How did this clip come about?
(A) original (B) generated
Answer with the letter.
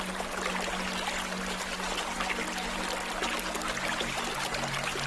A